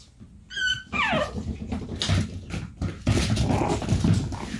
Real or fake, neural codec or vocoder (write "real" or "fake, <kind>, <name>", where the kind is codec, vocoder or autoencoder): real